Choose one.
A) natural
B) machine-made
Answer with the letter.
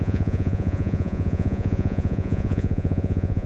B